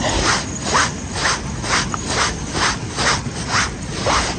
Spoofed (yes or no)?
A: no